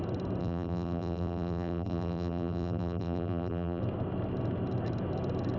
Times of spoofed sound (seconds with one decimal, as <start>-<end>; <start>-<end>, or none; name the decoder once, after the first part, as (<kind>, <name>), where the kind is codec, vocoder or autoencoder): 0.4-3.8 (vocoder, BigVGAN v2)